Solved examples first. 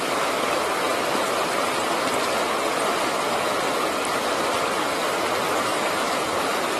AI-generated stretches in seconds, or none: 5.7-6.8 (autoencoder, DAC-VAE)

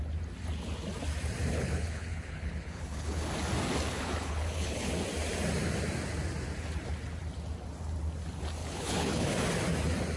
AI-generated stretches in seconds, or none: 1.5-3.3 (codec, HILCodec); 3.9-4.9; 8.6-9.3

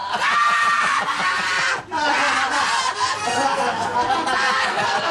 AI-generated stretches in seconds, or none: 3.1-5.1 (codec, SNAC)

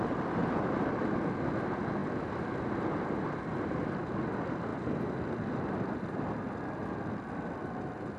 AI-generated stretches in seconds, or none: none